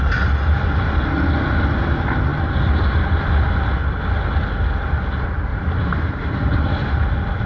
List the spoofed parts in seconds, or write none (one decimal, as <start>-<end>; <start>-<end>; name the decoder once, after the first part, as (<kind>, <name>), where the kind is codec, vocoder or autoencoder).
5.5-6.9 (vocoder, BigVGAN v2)